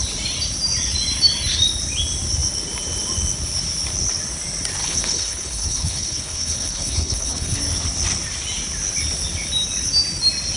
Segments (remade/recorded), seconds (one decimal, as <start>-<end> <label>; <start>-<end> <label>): 0.0-4.8 recorded; 4.8-7.6 remade; 7.6-10.6 recorded

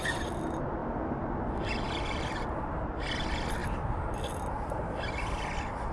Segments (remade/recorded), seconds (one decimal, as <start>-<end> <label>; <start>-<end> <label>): 0.0-5.9 recorded